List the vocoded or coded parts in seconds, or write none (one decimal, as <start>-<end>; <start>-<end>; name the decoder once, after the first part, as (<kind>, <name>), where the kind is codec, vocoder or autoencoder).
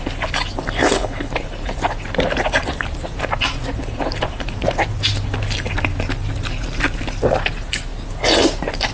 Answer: 0.8-1.3 (codec, HILCodec)